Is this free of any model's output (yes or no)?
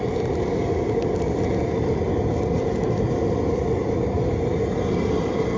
yes